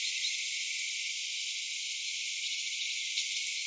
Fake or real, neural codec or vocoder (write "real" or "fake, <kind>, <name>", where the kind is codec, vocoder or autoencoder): real